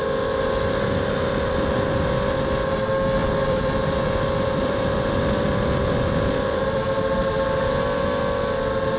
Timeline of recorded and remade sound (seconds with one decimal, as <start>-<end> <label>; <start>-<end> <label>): 0.0-3.2 recorded; 3.2-7.7 remade; 7.7-9.0 recorded